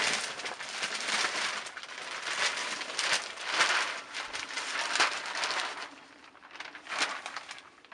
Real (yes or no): yes